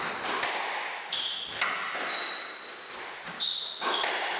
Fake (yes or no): no